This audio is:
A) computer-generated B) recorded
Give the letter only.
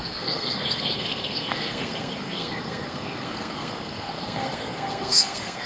A